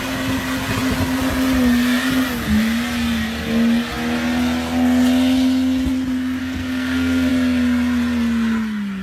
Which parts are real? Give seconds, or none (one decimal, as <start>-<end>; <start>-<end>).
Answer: 0.0-6.4; 7.3-9.0